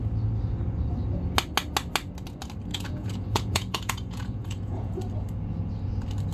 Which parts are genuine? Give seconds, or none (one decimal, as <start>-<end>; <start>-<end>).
0.0-2.7; 5.0-6.3